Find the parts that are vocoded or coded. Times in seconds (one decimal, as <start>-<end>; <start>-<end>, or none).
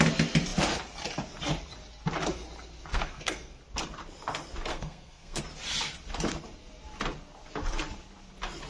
2.9-3.6; 4.7-5.4